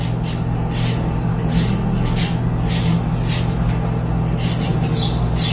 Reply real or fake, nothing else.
real